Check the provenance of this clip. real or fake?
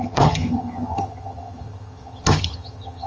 fake